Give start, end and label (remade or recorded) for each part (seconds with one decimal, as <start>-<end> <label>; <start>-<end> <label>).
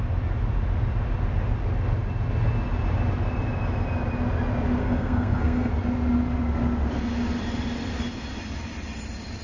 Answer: 0.0-4.8 recorded; 4.8-5.7 remade; 5.7-9.4 recorded